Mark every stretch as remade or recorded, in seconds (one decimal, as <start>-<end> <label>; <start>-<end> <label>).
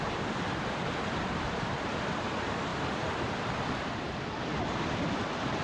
0.0-5.6 remade